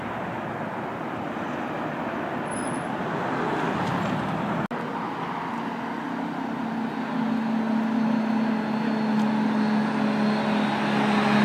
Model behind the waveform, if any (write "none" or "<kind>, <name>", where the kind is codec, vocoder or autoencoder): none